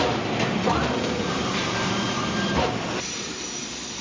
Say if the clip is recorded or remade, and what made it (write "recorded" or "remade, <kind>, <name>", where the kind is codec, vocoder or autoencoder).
remade, vocoder, BigVGAN v2